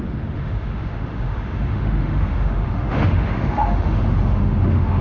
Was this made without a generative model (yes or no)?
no